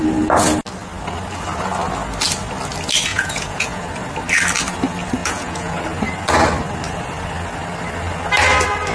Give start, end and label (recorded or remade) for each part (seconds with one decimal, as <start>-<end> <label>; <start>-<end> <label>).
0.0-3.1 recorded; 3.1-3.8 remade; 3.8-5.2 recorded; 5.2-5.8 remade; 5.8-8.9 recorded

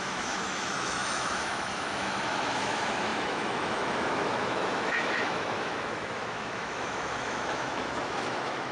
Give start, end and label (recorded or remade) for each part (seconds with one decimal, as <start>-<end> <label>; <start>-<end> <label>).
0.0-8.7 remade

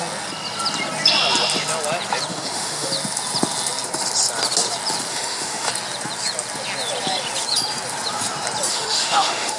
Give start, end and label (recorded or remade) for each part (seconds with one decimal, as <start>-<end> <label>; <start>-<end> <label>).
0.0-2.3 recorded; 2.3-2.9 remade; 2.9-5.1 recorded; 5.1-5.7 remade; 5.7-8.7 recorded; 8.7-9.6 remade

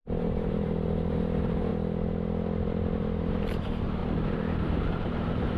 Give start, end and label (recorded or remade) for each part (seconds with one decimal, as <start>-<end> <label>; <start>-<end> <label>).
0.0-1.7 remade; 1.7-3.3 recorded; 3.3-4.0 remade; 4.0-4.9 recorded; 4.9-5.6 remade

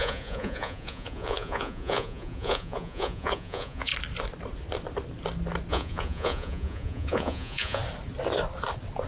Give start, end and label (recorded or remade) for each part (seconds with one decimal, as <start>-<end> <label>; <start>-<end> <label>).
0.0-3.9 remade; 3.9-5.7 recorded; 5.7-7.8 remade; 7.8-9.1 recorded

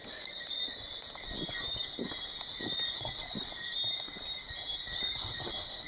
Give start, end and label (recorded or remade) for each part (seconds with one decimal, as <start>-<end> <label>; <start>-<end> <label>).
0.0-1.1 remade; 1.1-4.9 recorded; 4.9-5.9 remade

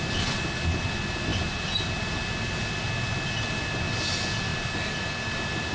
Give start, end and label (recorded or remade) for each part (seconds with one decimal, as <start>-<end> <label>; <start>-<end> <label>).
0.0-5.7 recorded